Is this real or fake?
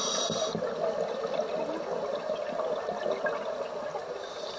real